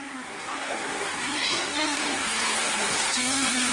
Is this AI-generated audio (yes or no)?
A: yes